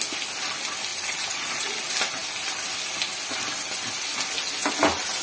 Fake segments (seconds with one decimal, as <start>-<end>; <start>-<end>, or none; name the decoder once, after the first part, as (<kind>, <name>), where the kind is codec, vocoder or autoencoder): 0.9-1.7 (vocoder, Vocos)

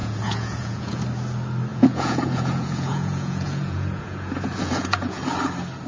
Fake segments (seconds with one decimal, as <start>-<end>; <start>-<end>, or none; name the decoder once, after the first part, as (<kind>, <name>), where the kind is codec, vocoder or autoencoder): 0.0-1.0 (vocoder, Vocos); 1.7-5.2

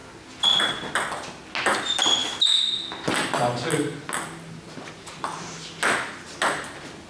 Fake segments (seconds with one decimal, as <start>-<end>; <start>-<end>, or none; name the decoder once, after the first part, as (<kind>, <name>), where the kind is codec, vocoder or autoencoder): none

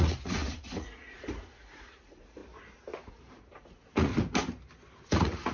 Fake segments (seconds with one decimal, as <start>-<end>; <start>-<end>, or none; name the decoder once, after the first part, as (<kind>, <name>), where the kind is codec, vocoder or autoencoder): 0.0-2.4 (vocoder, Vocos); 3.1-4.1; 5.1-5.5

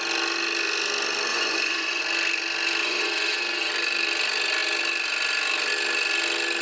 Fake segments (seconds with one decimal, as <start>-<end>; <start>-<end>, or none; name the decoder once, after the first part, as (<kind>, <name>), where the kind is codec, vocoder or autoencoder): 1.3-2.0 (vocoder, Vocos); 2.8-3.7

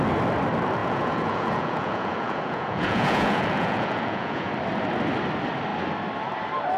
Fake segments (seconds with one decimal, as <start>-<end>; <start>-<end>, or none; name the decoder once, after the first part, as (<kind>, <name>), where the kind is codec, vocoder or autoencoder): 0.8-4.5 (vocoder, Vocos)

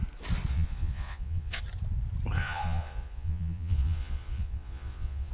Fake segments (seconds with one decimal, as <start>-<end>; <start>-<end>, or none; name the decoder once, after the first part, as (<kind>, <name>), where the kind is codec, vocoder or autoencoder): 0.5-1.6 (vocoder, Vocos); 2.4-5.3

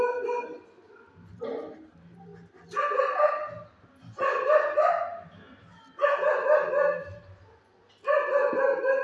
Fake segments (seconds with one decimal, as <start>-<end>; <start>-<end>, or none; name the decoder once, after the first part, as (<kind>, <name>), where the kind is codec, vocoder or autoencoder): none